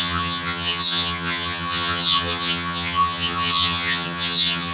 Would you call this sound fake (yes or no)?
yes